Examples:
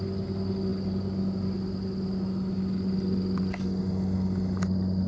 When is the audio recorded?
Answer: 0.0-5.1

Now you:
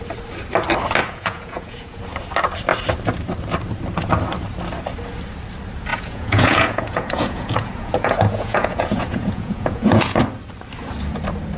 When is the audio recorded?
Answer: 0.0-1.0; 2.0-5.9; 10.2-11.6